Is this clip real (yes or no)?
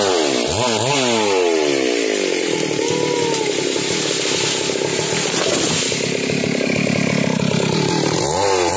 yes